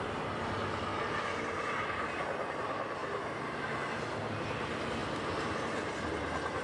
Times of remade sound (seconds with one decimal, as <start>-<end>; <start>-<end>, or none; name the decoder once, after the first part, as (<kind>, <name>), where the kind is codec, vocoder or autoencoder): none